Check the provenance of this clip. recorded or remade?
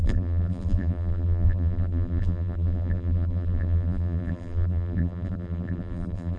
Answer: remade